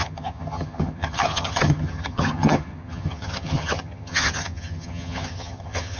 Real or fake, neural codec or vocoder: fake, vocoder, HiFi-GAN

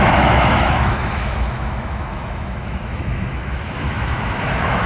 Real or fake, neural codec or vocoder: fake, autoencoder, DAC-VAE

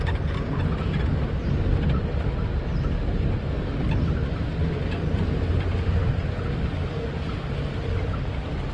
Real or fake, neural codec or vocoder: real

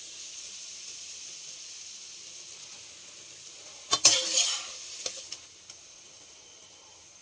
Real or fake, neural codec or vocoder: real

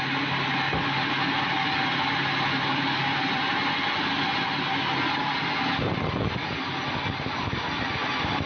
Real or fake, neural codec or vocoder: real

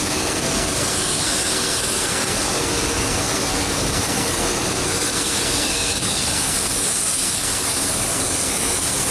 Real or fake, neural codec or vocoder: fake, codec, SNAC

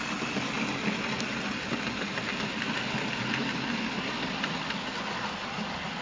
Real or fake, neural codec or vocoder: real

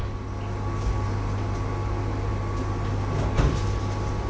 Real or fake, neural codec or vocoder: real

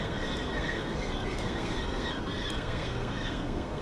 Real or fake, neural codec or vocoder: fake, codec, SNAC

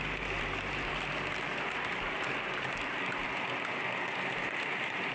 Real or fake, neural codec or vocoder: real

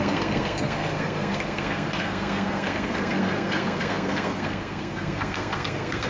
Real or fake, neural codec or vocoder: fake, codec, SNAC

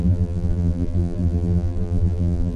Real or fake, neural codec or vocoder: fake, vocoder, BigVGAN v2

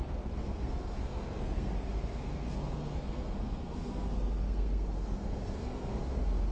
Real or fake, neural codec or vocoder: fake, codec, SNAC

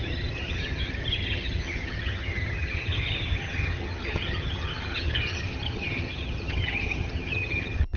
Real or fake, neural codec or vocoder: fake, vocoder, HiFi-GAN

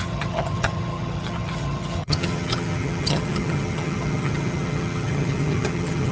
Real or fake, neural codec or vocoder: fake, vocoder, HiFi-GAN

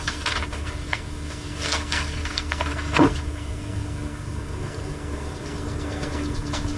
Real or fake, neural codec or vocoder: fake, codec, SNAC